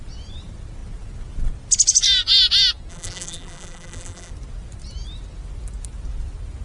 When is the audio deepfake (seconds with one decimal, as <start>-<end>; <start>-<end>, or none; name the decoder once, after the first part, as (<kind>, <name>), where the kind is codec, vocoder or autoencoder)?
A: 2.9-4.3 (vocoder, BigVGAN v2)